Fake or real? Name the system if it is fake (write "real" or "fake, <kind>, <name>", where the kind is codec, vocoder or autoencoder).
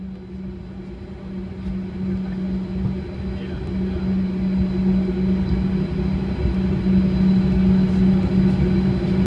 real